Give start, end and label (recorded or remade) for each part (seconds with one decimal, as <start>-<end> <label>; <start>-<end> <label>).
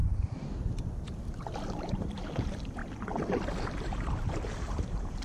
0.0-2.8 remade; 2.8-3.6 recorded; 3.6-5.2 remade